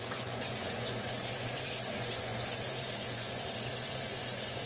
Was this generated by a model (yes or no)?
yes